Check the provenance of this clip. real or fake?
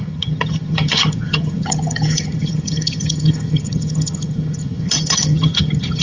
fake